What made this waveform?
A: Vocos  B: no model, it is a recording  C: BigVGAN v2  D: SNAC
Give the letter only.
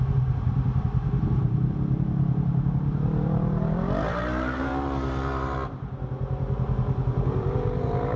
C